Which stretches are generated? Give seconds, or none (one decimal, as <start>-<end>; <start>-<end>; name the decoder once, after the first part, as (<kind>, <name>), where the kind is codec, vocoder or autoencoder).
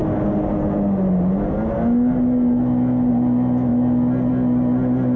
none